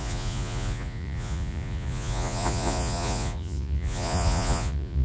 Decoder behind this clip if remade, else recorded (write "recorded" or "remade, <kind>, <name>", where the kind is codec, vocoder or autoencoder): remade, vocoder, Vocos